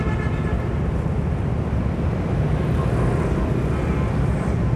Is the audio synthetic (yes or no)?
no